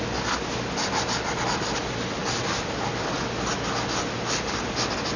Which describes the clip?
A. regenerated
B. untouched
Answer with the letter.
B